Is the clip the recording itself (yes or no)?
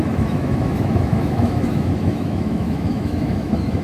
no